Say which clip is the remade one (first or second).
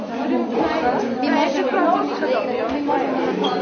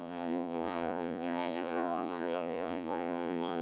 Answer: second